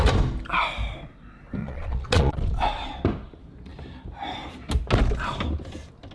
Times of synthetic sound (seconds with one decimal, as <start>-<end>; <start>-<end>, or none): 1.6-2.4